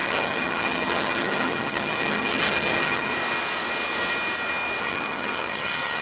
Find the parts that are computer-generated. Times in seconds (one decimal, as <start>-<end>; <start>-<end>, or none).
0.0-3.1; 4.8-6.0